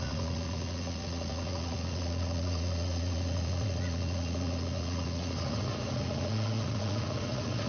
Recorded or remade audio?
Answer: remade